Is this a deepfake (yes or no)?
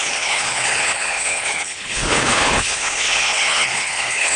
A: yes